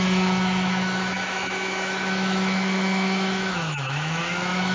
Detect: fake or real fake